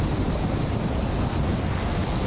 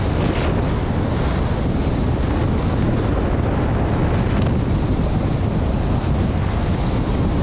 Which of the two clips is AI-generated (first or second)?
first